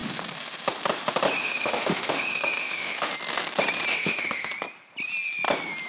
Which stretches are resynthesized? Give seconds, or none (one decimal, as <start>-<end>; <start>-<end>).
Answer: 1.4-3.1; 3.9-4.5